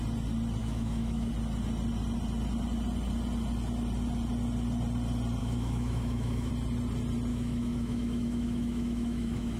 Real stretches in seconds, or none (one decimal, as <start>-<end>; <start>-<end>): 0.0-0.6; 1.3-5.4; 6.5-7.3